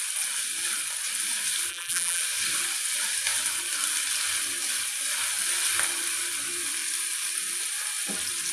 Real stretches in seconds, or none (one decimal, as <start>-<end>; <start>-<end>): 0.0-1.7; 2.2-8.5